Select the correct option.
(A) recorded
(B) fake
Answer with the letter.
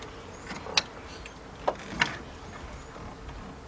A